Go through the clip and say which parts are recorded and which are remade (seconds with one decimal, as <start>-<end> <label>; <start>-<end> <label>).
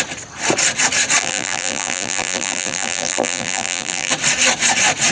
0.0-1.2 recorded; 1.2-4.1 remade; 4.1-5.1 recorded